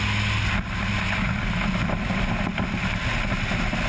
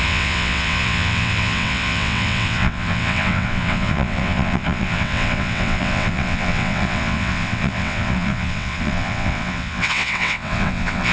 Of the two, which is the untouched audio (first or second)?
first